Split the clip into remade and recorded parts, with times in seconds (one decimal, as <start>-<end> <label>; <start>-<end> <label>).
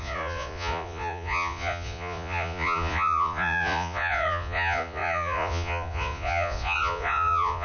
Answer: 0.0-7.6 remade